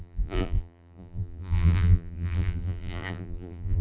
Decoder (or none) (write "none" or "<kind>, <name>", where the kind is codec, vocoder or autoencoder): vocoder, BigVGAN v2